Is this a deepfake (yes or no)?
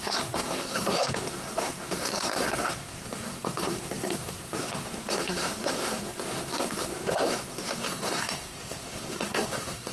yes